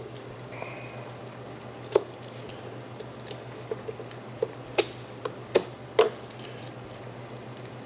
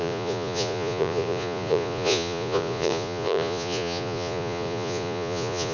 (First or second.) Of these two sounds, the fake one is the second